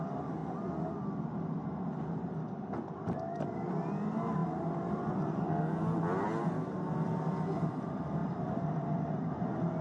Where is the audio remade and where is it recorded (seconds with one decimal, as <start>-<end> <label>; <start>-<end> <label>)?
0.0-8.2 recorded; 8.2-9.1 remade; 9.1-9.8 recorded